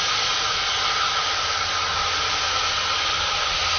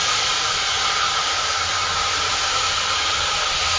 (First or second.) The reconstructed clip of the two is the second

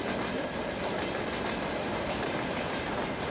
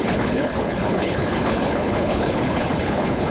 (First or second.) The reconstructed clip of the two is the second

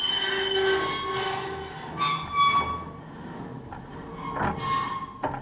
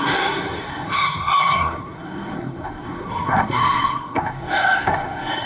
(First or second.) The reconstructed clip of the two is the second